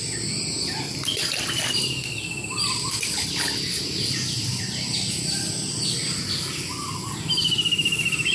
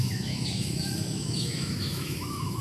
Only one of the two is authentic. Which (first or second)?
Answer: first